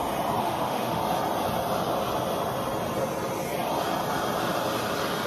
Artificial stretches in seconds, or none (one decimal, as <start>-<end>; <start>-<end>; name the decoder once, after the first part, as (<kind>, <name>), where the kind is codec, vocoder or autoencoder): 0.4-1.0 (autoencoder, DAC-VAE)